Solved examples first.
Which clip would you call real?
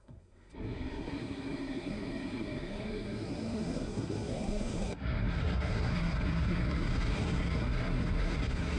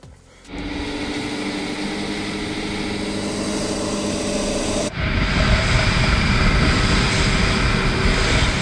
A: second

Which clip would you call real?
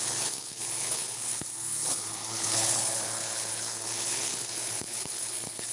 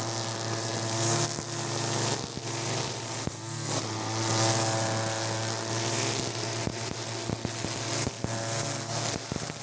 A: second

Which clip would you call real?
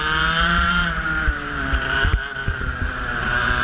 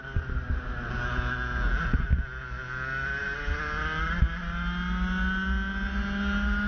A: second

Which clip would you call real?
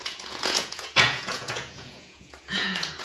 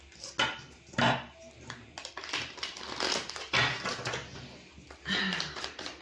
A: second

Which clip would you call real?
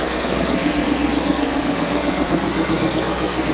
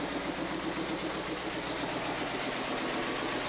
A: second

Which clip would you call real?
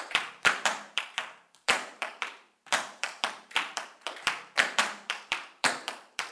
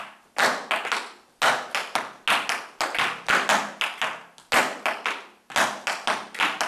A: second